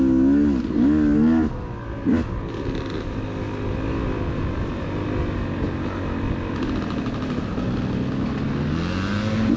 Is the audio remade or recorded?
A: recorded